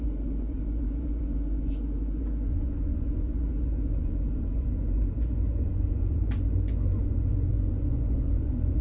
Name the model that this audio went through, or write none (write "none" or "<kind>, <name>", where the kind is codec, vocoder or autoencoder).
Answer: vocoder, Vocos